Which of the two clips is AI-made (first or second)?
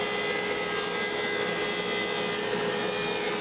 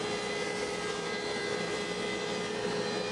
second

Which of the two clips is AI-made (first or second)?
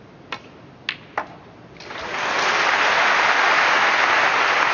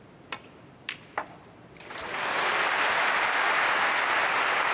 second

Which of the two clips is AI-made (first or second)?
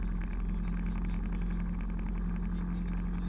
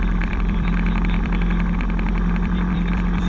second